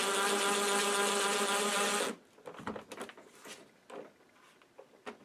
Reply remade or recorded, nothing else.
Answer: recorded